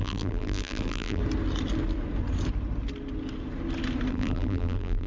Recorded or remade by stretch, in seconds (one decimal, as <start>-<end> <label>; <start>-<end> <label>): 0.0-1.2 remade; 1.2-4.1 recorded; 4.1-5.1 remade